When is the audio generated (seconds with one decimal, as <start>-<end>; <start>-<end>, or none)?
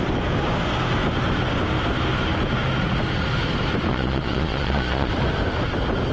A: 3.9-5.1